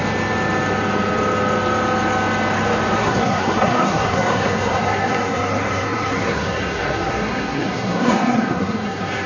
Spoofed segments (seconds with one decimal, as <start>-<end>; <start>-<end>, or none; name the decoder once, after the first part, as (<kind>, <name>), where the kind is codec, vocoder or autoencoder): 2.9-9.3 (codec, SNAC)